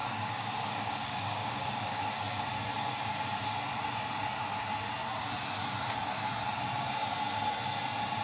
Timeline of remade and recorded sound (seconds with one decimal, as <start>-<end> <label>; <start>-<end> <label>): 0.0-2.0 remade; 2.0-8.2 recorded